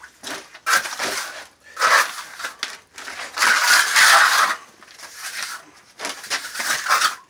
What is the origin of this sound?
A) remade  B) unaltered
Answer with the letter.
B